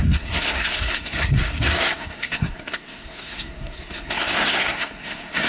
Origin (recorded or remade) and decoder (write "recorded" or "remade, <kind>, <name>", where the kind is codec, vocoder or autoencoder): remade, codec, SNAC